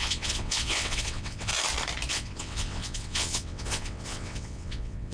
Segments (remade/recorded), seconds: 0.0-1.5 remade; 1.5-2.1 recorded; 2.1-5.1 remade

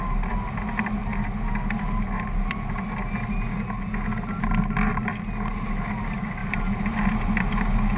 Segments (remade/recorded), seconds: 0.0-6.4 recorded; 6.4-7.0 remade; 7.0-8.0 recorded

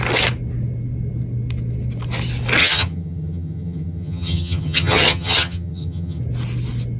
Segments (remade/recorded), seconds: 0.0-2.6 recorded; 2.6-6.2 remade; 6.2-7.0 recorded